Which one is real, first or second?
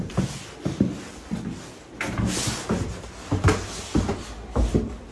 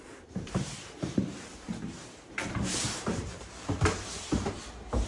first